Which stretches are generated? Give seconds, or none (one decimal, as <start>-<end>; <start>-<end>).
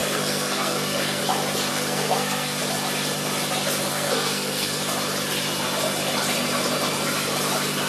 0.0-1.2; 1.7-2.6; 3.9-4.8